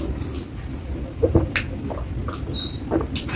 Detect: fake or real real